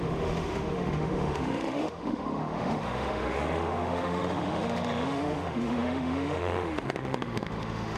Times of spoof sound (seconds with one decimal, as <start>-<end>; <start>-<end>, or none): 0.0-8.0